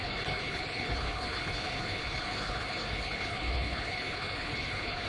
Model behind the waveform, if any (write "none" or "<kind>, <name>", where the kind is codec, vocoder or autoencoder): codec, HILCodec